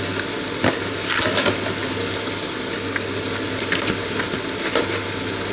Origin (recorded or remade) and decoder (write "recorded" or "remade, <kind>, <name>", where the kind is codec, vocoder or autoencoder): recorded